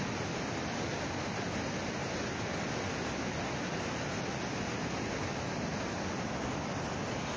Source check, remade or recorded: recorded